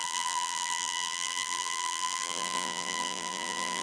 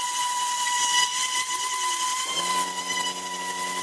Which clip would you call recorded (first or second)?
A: second